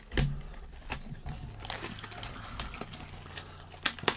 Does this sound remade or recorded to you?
recorded